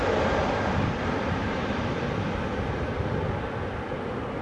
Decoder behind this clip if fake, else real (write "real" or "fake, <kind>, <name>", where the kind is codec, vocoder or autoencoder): real